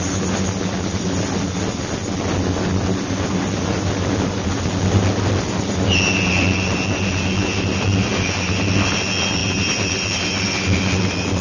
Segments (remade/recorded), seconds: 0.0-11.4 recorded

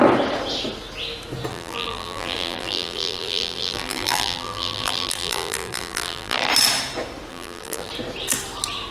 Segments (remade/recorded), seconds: 0.0-1.5 recorded; 1.5-6.5 remade; 6.5-7.3 recorded; 7.3-7.9 remade; 7.9-8.9 recorded

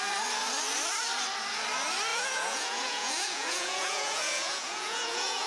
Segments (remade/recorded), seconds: 0.0-2.1 recorded; 2.1-5.5 remade

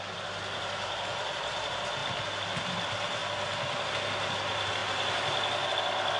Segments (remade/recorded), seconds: 0.0-6.2 recorded

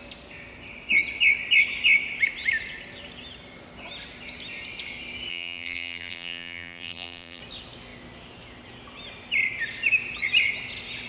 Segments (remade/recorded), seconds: 0.0-5.3 recorded; 5.3-7.4 remade; 7.4-11.1 recorded

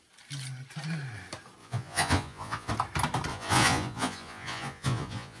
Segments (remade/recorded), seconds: 0.0-1.6 recorded; 1.6-2.7 remade; 2.7-3.3 recorded; 3.3-5.4 remade